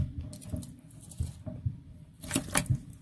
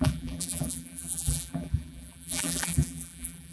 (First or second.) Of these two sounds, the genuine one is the first